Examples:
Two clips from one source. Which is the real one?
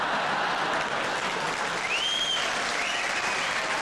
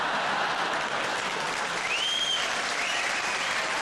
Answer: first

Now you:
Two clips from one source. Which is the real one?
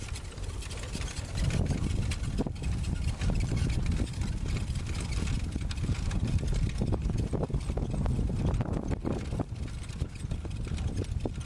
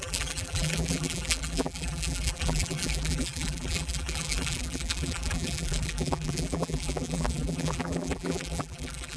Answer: first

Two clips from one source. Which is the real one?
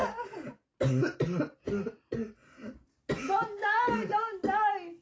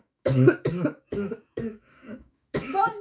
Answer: first